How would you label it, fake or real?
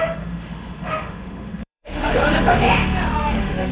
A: fake